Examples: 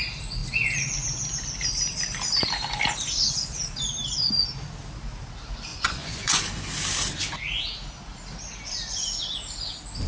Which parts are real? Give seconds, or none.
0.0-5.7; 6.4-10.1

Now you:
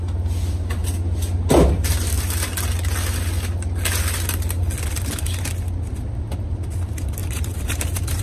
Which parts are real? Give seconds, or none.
0.0-0.8; 1.7-7.2

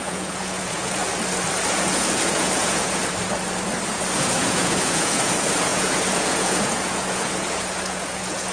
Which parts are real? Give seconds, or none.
1.0-1.7; 3.0-3.9

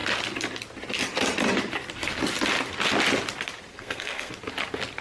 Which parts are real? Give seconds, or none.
0.0-3.7; 4.3-5.0

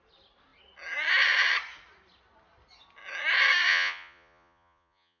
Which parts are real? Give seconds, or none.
0.0-3.7